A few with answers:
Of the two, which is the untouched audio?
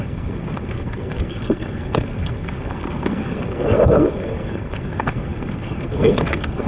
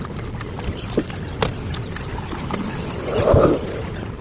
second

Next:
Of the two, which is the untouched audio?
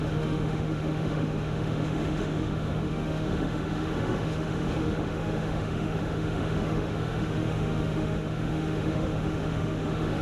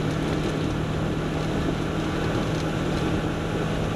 second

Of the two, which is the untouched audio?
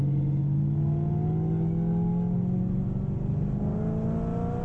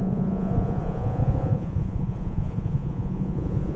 first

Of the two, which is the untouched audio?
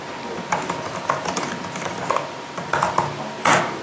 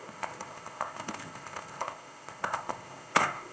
first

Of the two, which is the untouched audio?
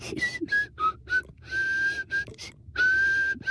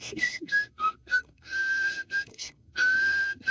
first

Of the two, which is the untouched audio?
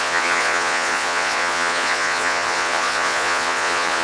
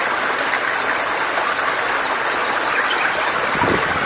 second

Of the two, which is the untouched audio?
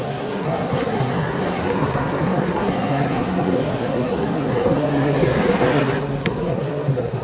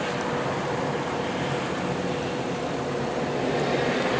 second